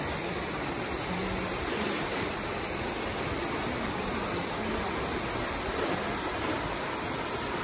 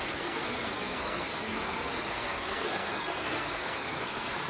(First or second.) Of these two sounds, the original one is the first